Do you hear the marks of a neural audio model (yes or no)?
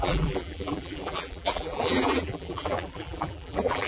yes